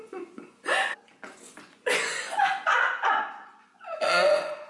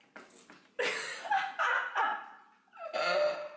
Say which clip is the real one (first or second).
second